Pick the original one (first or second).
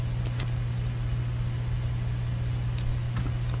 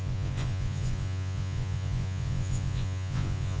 first